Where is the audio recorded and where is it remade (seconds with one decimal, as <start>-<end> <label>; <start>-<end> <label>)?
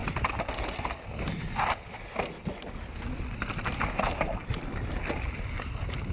0.0-6.1 recorded